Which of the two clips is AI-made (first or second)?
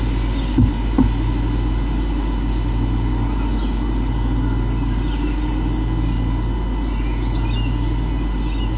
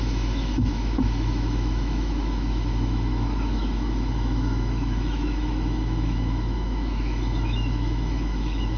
second